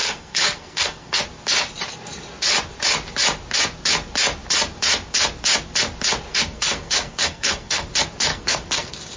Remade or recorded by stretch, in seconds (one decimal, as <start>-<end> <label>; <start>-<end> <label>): 0.0-1.2 remade; 1.2-6.3 recorded; 6.3-7.8 remade; 7.8-8.3 recorded; 8.3-9.2 remade